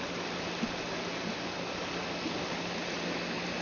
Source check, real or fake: real